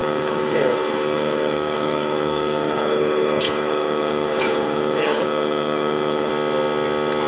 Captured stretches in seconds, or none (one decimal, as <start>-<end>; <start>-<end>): 6.3-7.3